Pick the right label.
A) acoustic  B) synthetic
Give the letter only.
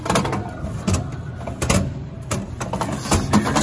A